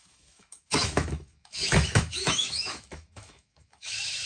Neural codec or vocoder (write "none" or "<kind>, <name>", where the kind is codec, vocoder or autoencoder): autoencoder, DAC-VAE